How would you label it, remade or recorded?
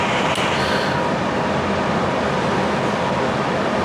recorded